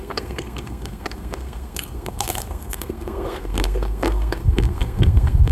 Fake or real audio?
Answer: fake